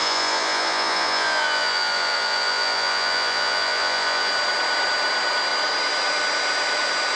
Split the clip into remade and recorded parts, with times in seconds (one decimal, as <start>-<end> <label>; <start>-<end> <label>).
0.0-4.3 remade; 4.3-7.2 recorded